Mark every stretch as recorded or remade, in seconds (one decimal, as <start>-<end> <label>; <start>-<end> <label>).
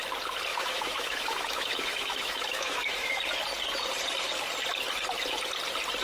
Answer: 0.0-0.5 recorded; 0.5-3.1 remade; 3.1-6.0 recorded